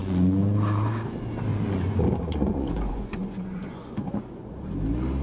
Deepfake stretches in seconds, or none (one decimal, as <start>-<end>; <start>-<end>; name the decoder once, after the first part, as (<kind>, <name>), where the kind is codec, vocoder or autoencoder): 0.0-1.0 (vocoder, Vocos); 1.5-4.5